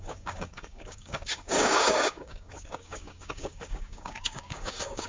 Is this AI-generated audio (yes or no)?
yes